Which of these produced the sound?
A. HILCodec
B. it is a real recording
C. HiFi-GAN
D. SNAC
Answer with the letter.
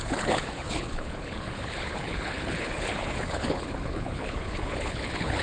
A